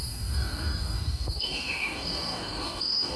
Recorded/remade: remade